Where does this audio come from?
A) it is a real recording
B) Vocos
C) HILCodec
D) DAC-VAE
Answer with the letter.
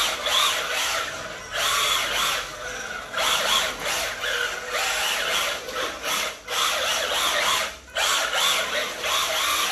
A